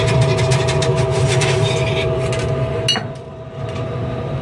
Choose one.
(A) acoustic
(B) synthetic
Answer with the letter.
A